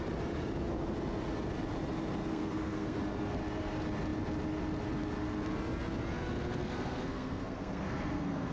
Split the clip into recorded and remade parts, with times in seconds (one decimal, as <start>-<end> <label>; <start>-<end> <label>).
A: 0.0-2.3 recorded; 2.3-3.0 remade; 3.0-6.6 recorded; 6.6-8.5 remade